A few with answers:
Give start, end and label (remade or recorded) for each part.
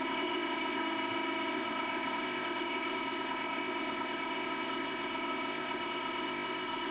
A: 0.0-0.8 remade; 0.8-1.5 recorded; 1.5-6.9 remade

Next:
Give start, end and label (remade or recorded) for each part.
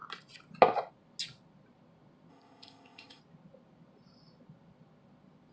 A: 0.0-2.3 recorded; 2.3-3.2 remade; 3.2-5.5 recorded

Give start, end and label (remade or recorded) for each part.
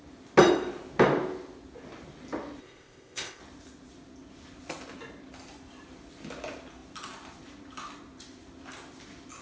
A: 0.0-2.6 recorded; 2.6-3.4 remade; 3.4-9.4 recorded